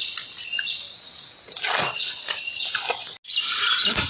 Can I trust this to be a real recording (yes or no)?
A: yes